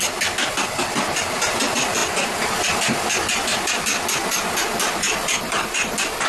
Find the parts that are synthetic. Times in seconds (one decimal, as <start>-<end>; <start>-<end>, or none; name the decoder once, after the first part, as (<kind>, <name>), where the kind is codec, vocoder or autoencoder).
none